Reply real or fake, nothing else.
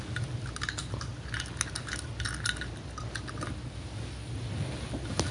real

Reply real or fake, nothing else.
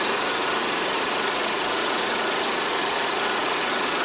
fake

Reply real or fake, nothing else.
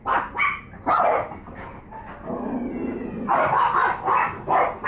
real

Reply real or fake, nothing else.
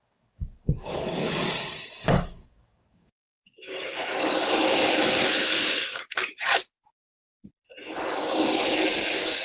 fake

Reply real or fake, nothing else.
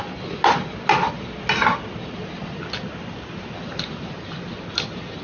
real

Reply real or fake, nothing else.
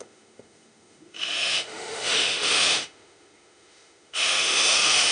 fake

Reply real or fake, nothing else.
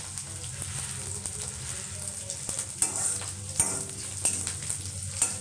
real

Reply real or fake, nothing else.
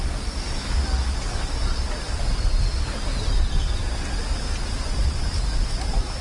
real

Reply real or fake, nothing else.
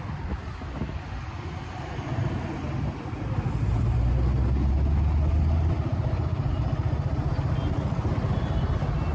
real